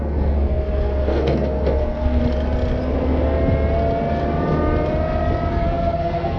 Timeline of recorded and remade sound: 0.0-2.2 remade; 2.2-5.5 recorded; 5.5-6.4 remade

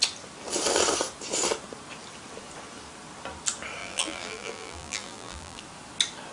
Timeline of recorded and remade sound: 0.0-3.8 recorded; 3.8-5.6 remade; 5.6-6.3 recorded

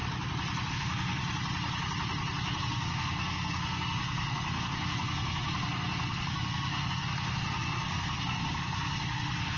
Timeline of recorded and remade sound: 0.0-0.7 recorded; 0.7-1.2 remade; 1.2-2.6 recorded; 2.6-9.6 remade

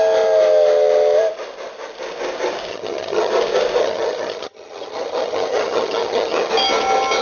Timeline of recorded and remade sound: 0.0-2.7 recorded; 2.7-3.3 remade; 3.3-3.8 recorded; 3.8-6.5 remade; 6.5-7.2 recorded

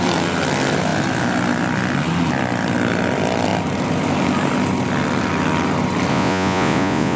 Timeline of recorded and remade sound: 0.0-6.1 recorded; 6.1-7.2 remade

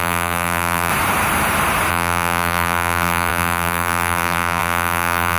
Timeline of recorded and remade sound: 0.0-0.9 remade; 0.9-1.9 recorded; 1.9-5.4 remade